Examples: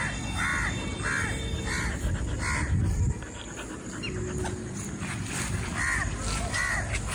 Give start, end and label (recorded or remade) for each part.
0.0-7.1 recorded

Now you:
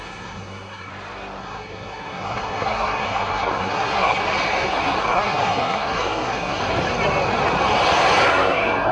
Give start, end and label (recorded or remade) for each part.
0.0-0.9 remade; 0.9-1.4 recorded; 1.4-4.2 remade; 4.2-5.0 recorded; 5.0-6.6 remade; 6.6-8.3 recorded; 8.3-8.9 remade

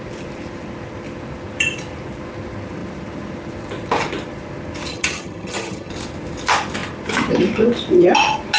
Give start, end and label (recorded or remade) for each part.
0.0-4.9 recorded; 4.9-5.9 remade; 5.9-8.6 recorded

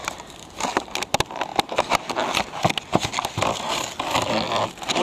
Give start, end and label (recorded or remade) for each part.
0.0-0.8 remade; 0.8-1.5 recorded; 1.5-4.5 remade; 4.5-5.0 recorded

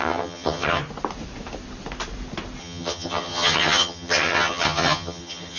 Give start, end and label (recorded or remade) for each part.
0.0-0.8 remade; 0.8-2.6 recorded; 2.6-5.6 remade

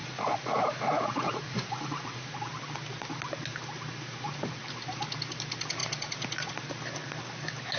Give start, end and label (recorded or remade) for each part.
0.0-2.3 remade; 2.3-7.8 recorded

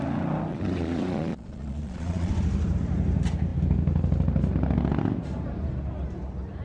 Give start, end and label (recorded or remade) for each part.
0.0-0.5 recorded; 0.5-2.3 remade; 2.3-6.6 recorded

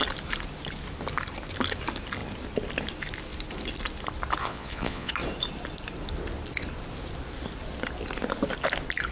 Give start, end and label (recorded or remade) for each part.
0.0-4.4 recorded; 4.4-5.1 remade; 5.1-9.1 recorded